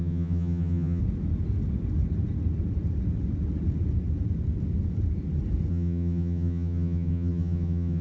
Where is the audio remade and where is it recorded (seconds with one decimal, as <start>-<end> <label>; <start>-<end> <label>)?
0.0-1.0 remade; 1.0-5.7 recorded; 5.7-8.0 remade